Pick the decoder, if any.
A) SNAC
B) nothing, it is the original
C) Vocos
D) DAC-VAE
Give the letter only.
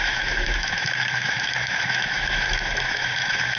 D